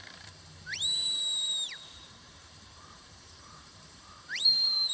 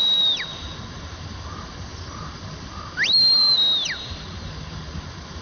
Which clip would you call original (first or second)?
second